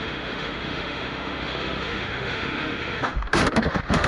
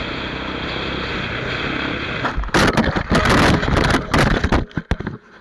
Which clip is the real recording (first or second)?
second